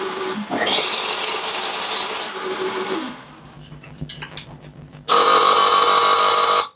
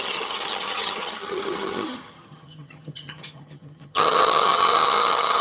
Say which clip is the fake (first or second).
second